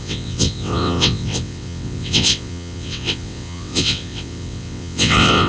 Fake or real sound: fake